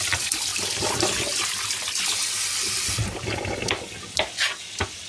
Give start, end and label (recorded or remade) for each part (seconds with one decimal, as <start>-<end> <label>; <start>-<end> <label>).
0.0-5.1 recorded